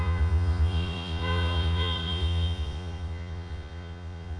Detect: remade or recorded remade